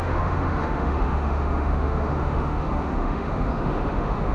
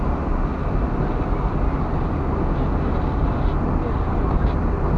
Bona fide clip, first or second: second